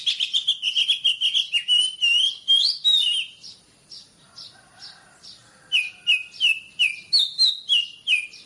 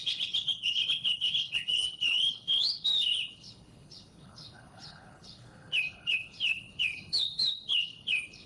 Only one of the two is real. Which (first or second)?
first